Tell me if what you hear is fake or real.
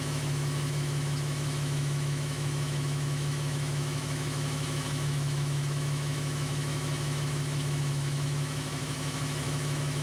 fake